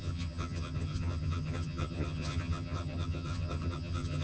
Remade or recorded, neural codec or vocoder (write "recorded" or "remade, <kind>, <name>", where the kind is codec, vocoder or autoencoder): remade, vocoder, HiFi-GAN